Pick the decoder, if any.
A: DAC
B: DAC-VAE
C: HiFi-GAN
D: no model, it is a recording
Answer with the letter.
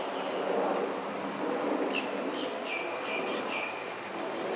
D